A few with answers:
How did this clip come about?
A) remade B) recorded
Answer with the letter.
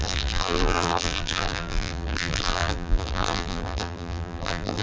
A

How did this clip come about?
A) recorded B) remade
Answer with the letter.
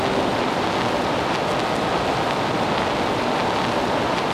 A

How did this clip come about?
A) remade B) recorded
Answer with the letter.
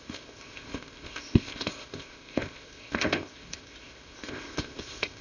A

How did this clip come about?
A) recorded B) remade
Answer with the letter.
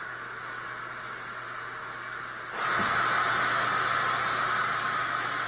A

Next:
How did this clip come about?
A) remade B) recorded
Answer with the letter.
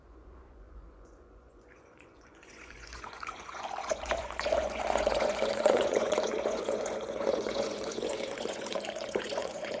A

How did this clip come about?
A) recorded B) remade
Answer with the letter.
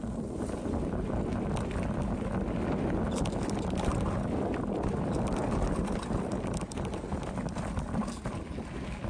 A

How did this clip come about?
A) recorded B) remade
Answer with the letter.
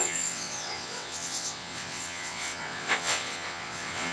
B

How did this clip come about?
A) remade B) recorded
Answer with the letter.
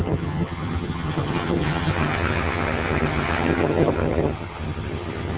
A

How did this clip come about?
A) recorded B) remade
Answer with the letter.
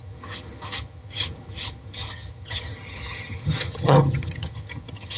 B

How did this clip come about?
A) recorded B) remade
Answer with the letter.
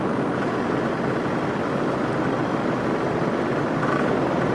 A